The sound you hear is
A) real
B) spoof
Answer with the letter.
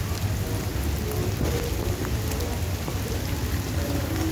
A